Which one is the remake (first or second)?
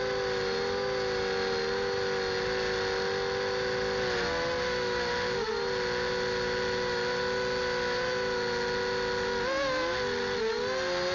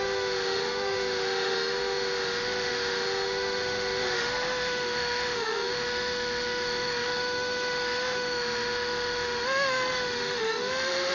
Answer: second